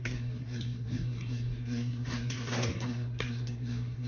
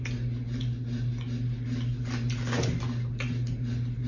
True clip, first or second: second